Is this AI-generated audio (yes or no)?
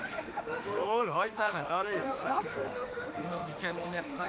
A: yes